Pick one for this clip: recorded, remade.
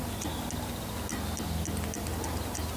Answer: recorded